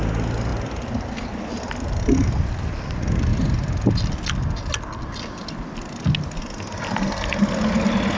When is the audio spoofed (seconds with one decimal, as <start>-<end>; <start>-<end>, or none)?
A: none